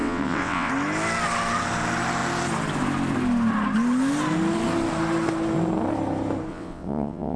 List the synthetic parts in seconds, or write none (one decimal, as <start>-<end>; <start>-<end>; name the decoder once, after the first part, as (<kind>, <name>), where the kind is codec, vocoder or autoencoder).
0.0-0.7 (vocoder, WaveNeXt); 6.5-7.4